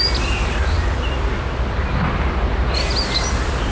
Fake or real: real